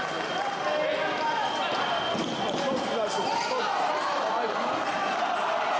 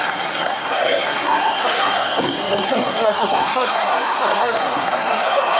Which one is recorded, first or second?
first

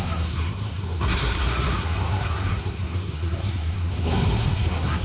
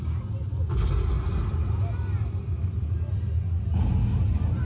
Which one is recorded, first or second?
second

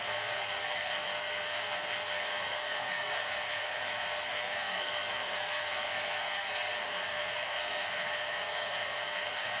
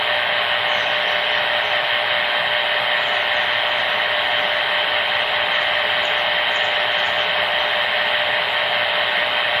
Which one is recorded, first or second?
second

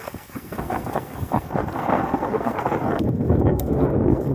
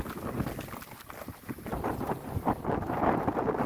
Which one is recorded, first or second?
second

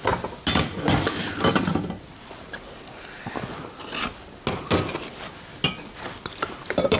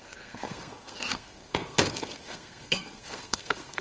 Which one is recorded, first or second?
first